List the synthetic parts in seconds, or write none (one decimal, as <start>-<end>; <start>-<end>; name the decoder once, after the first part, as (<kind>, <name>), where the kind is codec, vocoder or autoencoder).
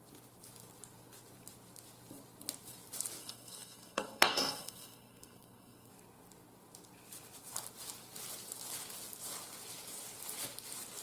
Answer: 3.2-5.9 (codec, SNAC)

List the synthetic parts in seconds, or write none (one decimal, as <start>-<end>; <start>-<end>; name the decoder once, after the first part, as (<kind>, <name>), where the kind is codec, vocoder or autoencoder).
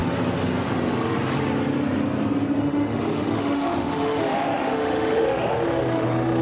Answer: 2.6-6.4 (autoencoder, DAC-VAE)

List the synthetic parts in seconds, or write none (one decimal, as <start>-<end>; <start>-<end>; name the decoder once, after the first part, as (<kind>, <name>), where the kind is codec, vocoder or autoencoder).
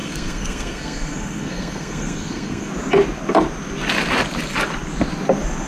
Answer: 0.0-2.7 (codec, SNAC)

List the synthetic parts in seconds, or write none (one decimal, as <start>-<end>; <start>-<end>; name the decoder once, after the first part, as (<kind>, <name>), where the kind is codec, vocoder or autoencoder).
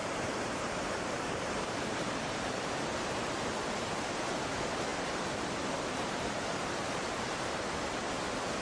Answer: 0.0-3.4 (vocoder, BigVGAN v2); 4.9-7.7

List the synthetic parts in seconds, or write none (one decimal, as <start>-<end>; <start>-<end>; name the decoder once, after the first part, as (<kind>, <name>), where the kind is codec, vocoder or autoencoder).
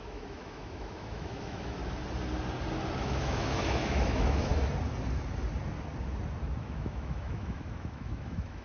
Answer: 0.0-1.8 (autoencoder, DAC-VAE); 3.0-4.5; 6.6-8.6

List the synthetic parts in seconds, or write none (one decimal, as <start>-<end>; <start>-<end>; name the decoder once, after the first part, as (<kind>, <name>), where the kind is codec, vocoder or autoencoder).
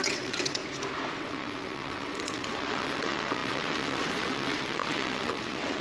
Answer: 0.0-0.6 (vocoder, WaveNeXt); 1.2-5.8